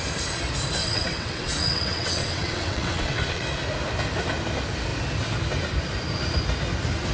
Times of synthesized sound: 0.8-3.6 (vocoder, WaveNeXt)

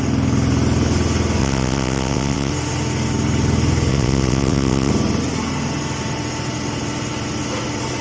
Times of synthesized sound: 1.4-2.5 (vocoder, WaveNeXt); 3.9-4.9

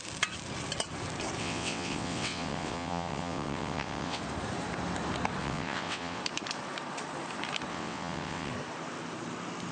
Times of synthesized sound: 1.4-4.2 (vocoder, WaveNeXt); 5.4-6.2; 7.7-8.5

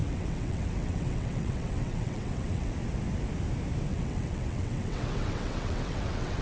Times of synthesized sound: 0.0-2.7 (vocoder, WaveNeXt); 3.9-6.4